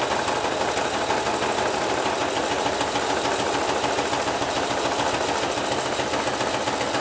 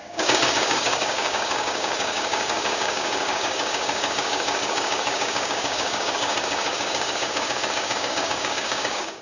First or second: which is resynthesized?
second